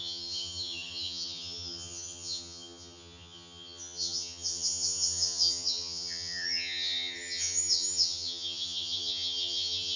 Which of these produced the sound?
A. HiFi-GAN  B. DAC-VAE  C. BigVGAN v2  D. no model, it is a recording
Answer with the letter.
A